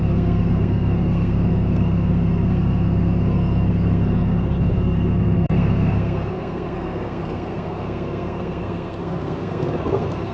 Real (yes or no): no